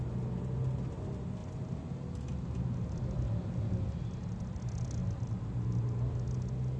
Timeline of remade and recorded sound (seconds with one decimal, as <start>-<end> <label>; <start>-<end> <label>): 0.0-6.8 recorded

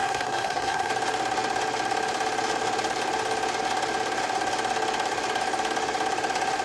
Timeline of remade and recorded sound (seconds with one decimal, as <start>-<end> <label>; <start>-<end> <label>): 0.0-0.9 remade; 0.9-6.6 recorded